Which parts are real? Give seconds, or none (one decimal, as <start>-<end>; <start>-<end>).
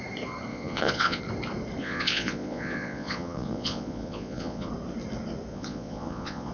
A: 0.0-0.5; 1.2-1.8; 4.7-5.5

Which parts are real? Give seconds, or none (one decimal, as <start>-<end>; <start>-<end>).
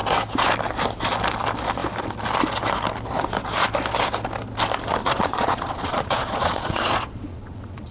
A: 0.0-5.0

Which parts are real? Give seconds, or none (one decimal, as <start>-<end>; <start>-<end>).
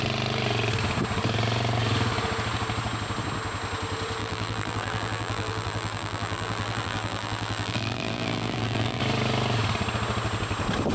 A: 0.0-4.2; 9.0-10.9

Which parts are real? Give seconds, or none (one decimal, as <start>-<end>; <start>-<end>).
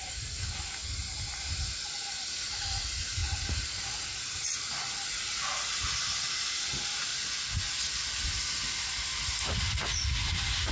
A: 0.0-10.7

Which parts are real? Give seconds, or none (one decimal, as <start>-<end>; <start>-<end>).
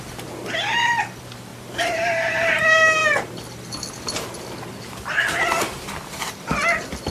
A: 0.0-1.5; 2.6-7.1